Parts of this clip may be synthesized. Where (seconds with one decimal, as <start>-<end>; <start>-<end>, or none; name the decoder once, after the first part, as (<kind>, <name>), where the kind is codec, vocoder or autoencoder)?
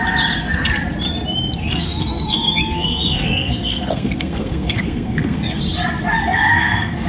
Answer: 1.6-5.6 (codec, SNAC); 6.1-7.1